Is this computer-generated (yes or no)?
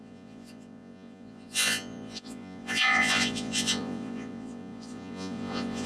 yes